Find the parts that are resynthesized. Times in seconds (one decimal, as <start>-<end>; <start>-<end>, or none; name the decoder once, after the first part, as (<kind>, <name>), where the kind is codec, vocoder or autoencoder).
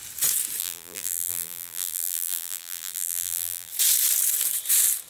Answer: 0.6-3.7 (vocoder, BigVGAN v2)